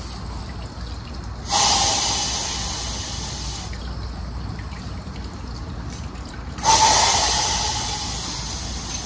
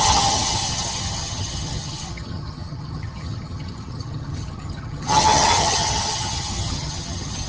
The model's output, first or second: second